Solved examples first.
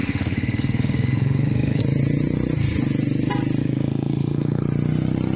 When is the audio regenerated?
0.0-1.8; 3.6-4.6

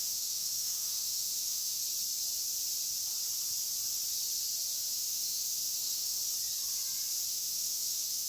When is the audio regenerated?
0.0-1.8; 4.9-6.2; 7.3-8.3

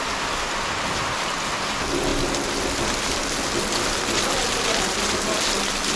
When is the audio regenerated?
none

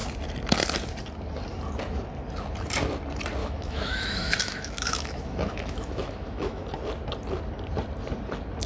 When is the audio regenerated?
3.4-6.6

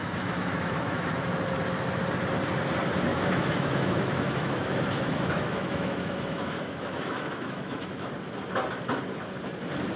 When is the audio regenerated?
0.0-1.2; 3.1-8.1

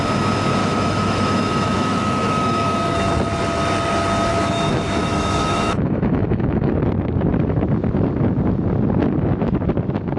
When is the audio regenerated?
0.6-2.7; 4.3-6.7

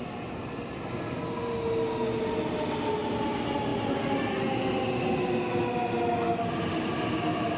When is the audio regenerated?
none